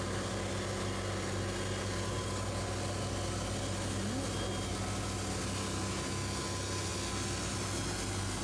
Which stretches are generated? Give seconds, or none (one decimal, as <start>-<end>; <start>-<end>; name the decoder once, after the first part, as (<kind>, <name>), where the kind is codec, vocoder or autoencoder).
none